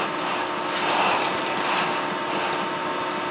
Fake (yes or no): no